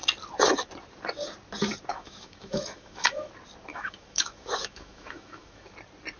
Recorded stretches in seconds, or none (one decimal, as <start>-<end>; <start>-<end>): 0.0-1.9; 3.3-3.7; 5.7-6.2